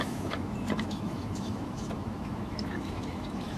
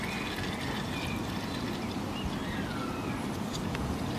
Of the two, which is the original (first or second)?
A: second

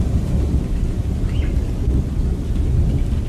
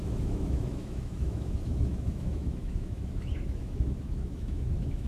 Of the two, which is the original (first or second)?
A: first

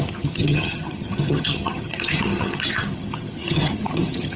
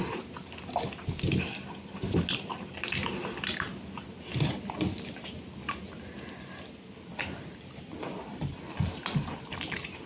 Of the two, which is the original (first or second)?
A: second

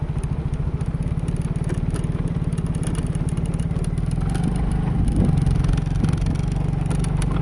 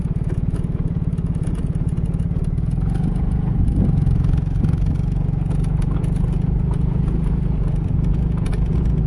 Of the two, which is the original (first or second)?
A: first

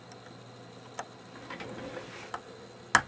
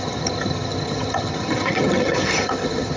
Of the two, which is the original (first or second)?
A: first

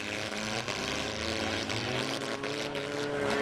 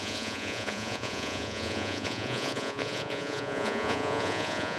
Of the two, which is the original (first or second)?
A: first